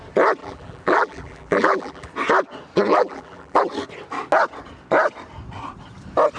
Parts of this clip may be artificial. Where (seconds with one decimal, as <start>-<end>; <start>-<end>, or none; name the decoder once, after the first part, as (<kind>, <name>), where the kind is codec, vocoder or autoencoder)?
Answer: 0.4-2.1 (vocoder, BigVGAN v2); 2.9-3.6